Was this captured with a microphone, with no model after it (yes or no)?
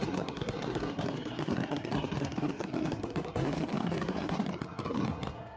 no